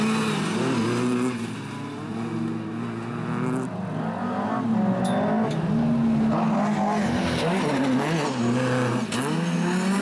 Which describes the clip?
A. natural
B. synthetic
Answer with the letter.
A